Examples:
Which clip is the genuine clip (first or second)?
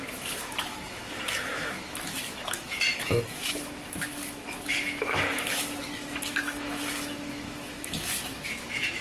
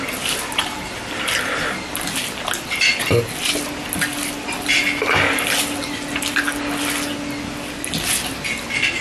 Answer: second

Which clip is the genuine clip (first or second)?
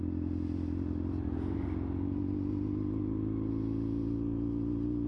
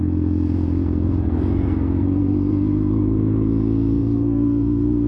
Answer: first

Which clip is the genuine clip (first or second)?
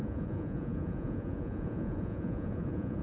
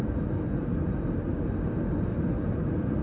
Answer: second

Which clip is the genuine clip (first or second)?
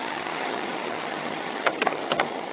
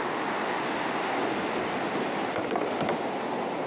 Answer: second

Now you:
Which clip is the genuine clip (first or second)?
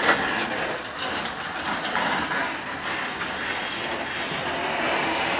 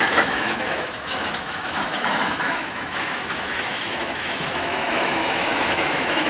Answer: first